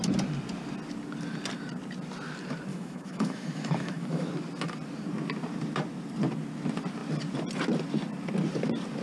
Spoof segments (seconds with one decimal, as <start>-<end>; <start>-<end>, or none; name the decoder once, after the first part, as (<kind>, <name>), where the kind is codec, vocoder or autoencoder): 2.7-4.3 (autoencoder, DAC-VAE)